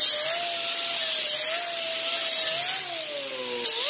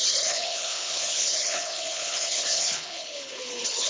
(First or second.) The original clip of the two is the first